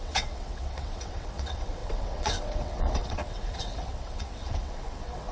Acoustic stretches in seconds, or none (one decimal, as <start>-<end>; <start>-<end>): none